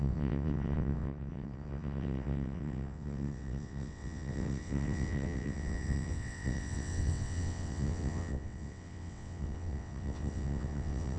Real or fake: fake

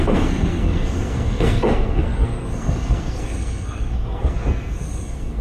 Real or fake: fake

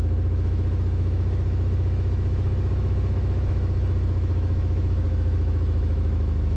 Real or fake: fake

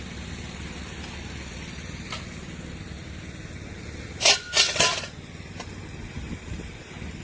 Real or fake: real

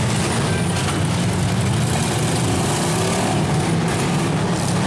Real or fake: real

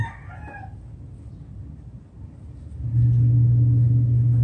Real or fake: real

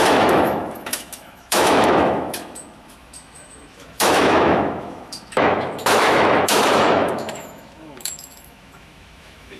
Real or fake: fake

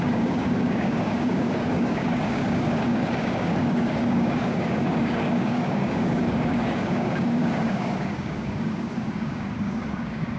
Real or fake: fake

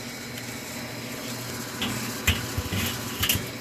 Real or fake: real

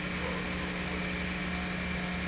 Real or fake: real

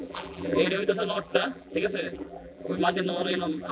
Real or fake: fake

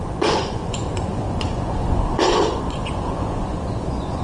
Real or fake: fake